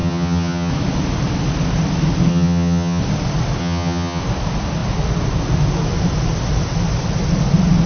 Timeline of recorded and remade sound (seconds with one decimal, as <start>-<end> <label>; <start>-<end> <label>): 0.0-0.7 remade; 0.7-2.3 recorded; 2.3-3.0 remade; 3.0-3.6 recorded; 3.6-4.2 remade; 4.2-7.9 recorded